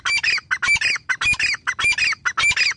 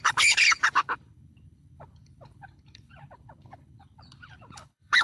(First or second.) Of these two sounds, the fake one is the second